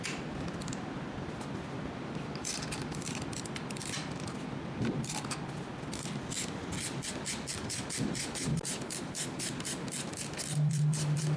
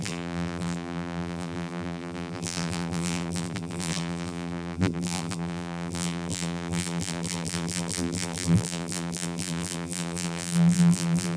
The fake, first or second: second